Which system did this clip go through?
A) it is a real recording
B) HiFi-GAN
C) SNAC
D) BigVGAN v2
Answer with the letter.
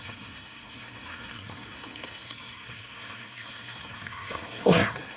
C